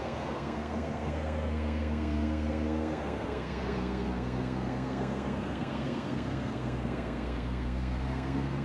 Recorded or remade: remade